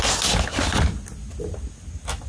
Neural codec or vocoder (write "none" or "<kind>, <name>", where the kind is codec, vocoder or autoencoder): none